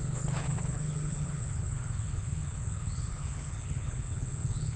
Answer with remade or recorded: remade